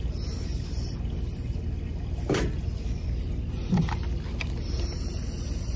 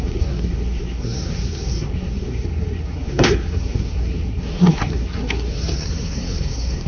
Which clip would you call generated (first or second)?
second